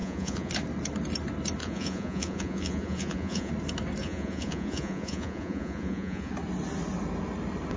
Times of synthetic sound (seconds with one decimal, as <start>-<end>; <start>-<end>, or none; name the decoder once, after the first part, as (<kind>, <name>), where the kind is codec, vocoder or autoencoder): 0.0-0.5 (vocoder, Vocos); 1.6-3.5; 4.0-6.3